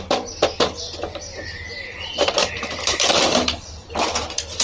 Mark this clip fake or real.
real